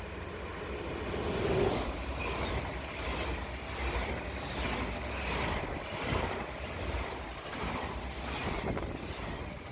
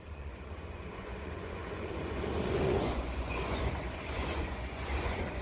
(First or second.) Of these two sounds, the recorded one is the first